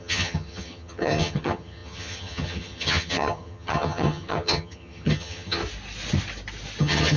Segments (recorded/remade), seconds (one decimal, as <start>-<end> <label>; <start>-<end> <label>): 0.0-5.6 remade; 5.6-6.8 recorded; 6.8-7.2 remade